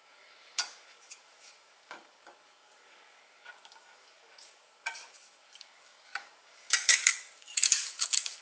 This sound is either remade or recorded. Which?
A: remade